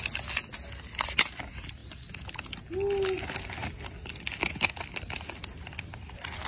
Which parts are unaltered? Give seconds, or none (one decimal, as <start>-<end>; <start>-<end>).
0.0-6.5